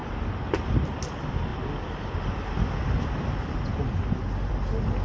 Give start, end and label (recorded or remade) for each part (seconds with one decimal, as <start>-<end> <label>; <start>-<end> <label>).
0.0-5.0 recorded